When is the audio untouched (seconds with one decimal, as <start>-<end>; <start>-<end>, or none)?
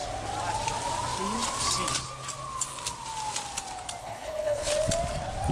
0.0-4.0; 4.7-5.5